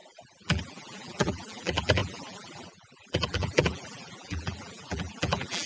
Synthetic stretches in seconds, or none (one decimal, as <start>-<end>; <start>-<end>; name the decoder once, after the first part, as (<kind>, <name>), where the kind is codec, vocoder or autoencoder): 0.0-5.7 (vocoder, BigVGAN v2)